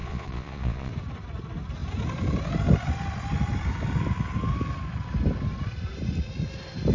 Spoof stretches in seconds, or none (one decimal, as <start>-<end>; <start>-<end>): 0.0-0.9